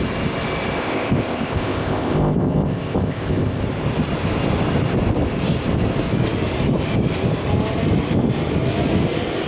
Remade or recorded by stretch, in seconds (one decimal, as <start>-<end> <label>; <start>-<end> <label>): 0.0-0.8 recorded; 0.8-3.6 remade; 3.6-9.5 recorded